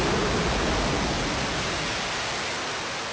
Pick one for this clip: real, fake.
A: real